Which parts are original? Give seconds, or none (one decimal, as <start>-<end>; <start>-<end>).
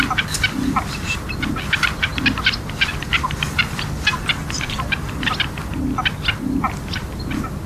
0.0-4.4; 5.1-7.7